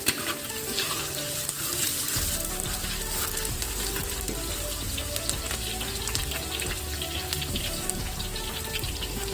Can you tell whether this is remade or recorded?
remade